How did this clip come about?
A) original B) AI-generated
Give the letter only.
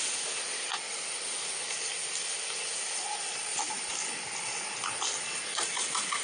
A